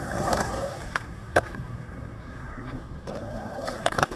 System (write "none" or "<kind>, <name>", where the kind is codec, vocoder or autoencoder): codec, SNAC